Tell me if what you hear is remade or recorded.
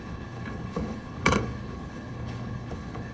remade